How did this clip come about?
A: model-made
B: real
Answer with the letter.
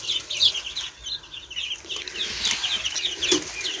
B